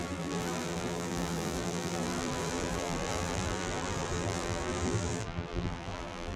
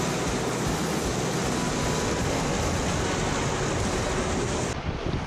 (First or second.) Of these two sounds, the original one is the second